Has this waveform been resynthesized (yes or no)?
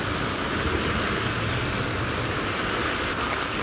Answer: no